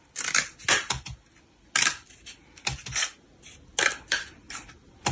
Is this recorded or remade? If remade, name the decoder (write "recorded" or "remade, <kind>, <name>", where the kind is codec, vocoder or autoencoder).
recorded